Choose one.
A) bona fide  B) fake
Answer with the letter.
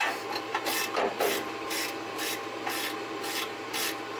A